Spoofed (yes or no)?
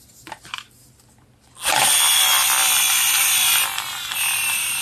no